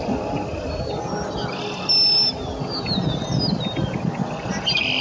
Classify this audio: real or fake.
real